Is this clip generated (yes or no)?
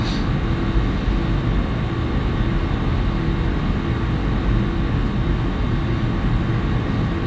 no